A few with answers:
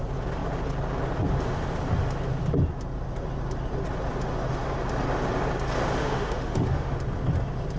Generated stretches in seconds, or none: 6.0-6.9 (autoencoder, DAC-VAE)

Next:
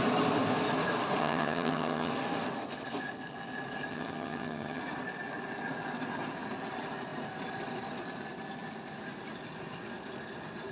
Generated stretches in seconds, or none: 1.2-2.1 (vocoder, HiFi-GAN); 3.9-4.8

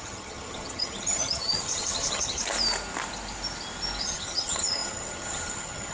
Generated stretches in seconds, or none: 0.0-2.4 (vocoder, HiFi-GAN); 4.0-5.9

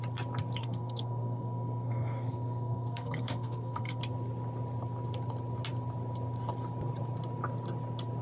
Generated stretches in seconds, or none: 0.6-4.0 (codec, SNAC)